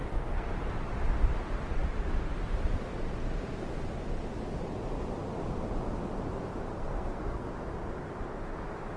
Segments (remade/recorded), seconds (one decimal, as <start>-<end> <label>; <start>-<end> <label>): 0.0-0.5 remade; 0.5-6.7 recorded; 6.7-7.5 remade; 7.5-9.0 recorded